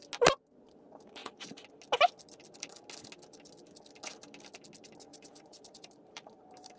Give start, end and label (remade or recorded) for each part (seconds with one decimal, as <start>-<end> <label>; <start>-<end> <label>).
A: 0.0-5.1 recorded; 5.1-6.8 remade